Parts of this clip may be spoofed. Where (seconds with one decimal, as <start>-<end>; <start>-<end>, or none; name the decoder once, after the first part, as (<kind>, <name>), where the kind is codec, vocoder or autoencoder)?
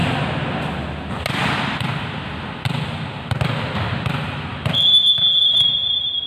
3.0-6.3 (vocoder, BigVGAN v2)